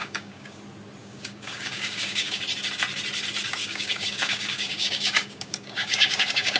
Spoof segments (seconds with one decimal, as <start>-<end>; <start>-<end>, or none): 0.0-0.6; 1.0-2.4; 3.6-6.6